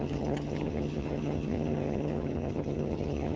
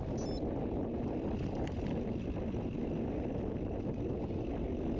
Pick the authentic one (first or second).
second